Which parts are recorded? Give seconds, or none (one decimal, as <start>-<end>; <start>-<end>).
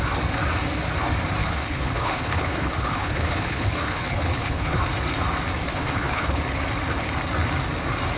0.0-1.4; 4.8-5.7; 6.4-8.2